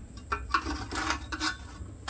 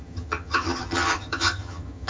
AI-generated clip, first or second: second